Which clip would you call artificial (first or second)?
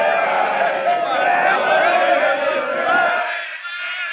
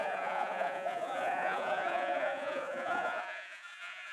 second